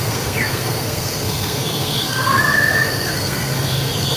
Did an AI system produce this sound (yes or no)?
yes